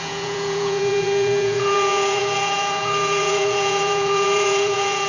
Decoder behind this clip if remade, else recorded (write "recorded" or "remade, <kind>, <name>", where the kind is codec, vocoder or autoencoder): remade, vocoder, Vocos